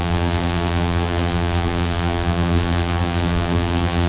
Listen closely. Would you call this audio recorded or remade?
remade